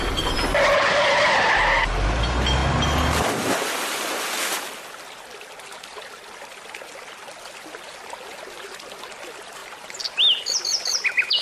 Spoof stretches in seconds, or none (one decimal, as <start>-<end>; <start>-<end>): none